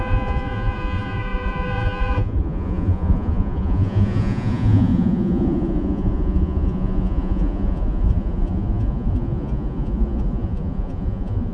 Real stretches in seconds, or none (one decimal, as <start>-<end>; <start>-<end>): none